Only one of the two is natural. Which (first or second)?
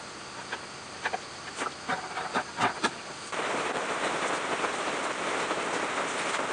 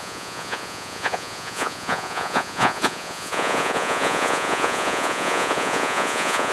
first